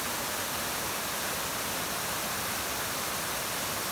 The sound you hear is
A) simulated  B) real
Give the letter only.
B